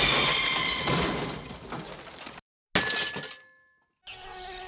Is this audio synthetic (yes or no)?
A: no